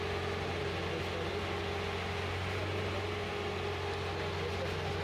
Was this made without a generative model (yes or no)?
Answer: yes